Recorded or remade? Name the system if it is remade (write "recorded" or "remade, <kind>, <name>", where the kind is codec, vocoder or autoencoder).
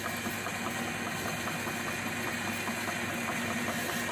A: recorded